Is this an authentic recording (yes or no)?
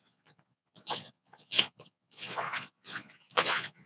no